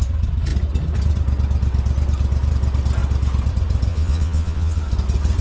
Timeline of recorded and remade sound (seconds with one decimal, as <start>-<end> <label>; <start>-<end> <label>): 0.0-3.9 recorded; 3.9-4.8 remade; 4.8-5.4 recorded